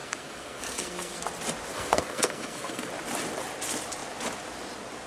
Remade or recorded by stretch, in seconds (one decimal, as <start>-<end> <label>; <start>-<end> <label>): 0.0-1.2 remade; 1.2-1.7 recorded; 1.7-2.9 remade; 2.9-5.1 recorded